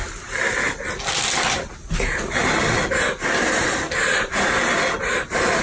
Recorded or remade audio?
recorded